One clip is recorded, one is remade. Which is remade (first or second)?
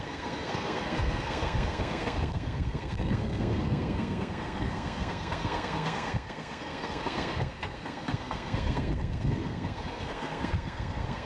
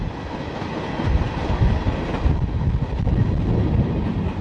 first